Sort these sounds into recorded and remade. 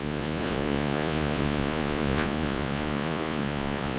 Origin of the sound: remade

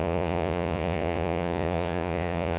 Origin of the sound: remade